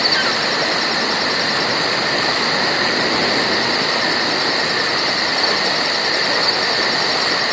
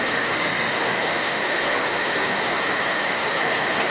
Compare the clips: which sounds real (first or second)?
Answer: first